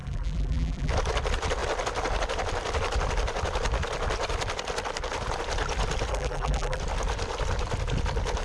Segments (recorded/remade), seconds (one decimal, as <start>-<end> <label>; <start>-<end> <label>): 0.0-0.9 remade; 0.9-6.1 recorded; 6.1-6.8 remade; 6.8-8.4 recorded

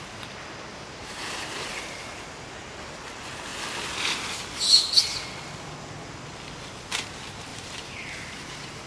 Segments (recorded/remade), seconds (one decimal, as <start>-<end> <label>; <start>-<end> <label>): 0.0-0.7 recorded; 0.7-1.7 remade; 1.7-7.5 recorded; 7.5-8.9 remade

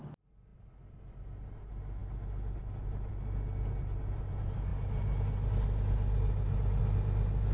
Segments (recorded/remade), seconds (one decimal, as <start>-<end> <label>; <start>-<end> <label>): 0.0-7.5 recorded

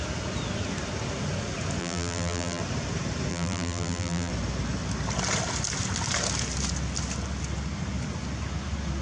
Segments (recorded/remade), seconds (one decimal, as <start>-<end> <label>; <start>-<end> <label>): 0.0-1.8 recorded; 1.8-2.6 remade; 2.6-3.3 recorded; 3.3-4.3 remade; 4.3-9.0 recorded

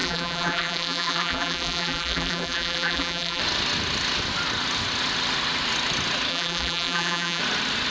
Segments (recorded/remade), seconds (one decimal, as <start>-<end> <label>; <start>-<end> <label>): 0.0-3.4 remade; 3.4-6.3 recorded; 6.3-7.4 remade; 7.4-7.9 recorded

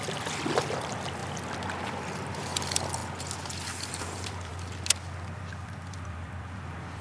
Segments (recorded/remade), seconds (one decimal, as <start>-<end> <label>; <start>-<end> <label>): 0.0-0.6 recorded; 0.6-1.2 remade; 1.2-1.8 recorded; 1.8-3.0 remade; 3.0-4.0 recorded; 4.0-4.5 remade; 4.5-5.4 recorded; 5.4-7.0 remade

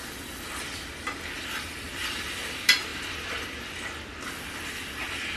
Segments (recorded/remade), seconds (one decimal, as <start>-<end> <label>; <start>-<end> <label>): 0.0-5.4 recorded

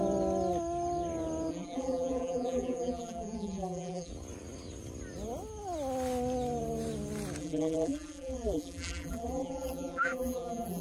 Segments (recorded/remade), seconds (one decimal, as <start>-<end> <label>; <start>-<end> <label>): 0.0-1.5 recorded; 1.5-4.1 remade; 4.1-7.4 recorded; 7.4-10.8 remade